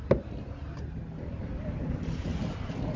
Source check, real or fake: real